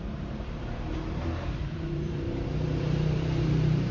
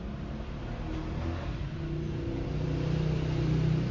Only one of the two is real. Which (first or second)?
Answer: second